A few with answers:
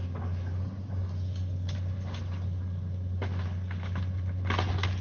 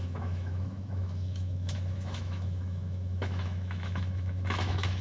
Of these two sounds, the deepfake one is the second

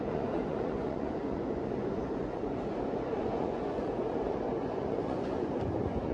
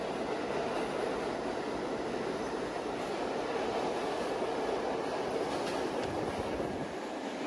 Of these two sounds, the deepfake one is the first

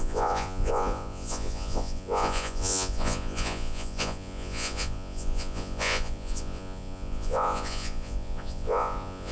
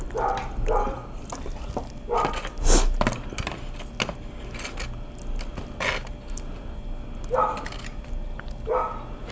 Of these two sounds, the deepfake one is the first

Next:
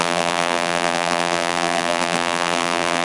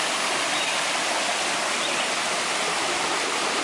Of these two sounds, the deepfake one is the first